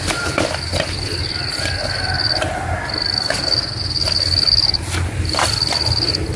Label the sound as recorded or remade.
recorded